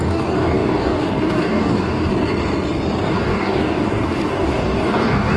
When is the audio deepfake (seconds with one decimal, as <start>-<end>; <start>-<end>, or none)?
0.0-2.1; 3.1-5.4